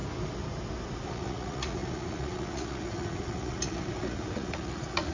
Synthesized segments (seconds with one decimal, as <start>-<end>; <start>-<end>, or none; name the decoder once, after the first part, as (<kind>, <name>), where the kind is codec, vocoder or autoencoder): 1.1-5.1 (vocoder, Vocos)